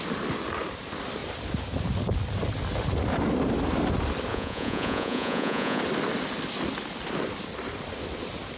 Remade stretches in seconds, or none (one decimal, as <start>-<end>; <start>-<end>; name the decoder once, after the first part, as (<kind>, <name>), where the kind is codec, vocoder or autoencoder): 4.3-5.8 (vocoder, Vocos)